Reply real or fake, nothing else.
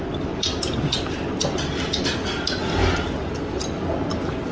real